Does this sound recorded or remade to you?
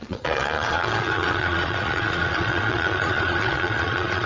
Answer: remade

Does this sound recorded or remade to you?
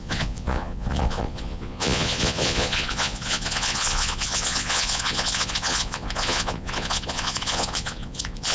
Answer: remade